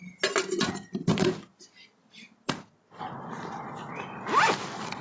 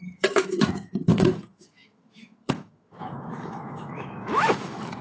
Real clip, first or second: first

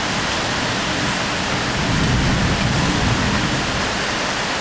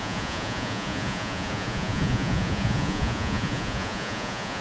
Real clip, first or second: first